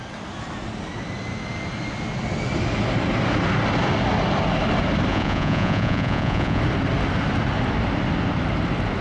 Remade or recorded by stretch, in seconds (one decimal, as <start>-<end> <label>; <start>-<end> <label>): 0.0-5.1 recorded; 5.1-6.6 remade; 6.6-9.0 recorded